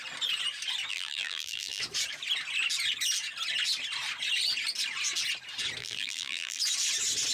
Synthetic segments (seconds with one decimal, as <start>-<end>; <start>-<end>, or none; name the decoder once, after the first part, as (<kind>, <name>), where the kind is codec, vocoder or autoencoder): 0.9-1.8 (vocoder, BigVGAN v2); 5.8-6.6